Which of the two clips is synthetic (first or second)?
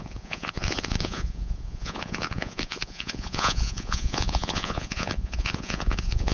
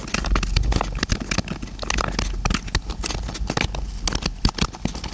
first